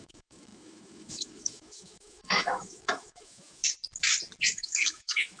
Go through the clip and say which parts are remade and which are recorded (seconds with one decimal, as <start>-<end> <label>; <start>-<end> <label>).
0.0-3.6 remade; 3.6-4.4 recorded; 4.4-5.4 remade